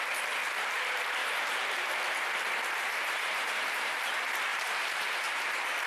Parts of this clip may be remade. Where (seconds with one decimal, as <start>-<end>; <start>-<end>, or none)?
1.2-1.9; 2.9-4.0; 4.5-5.9